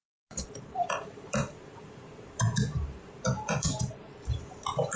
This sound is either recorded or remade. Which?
remade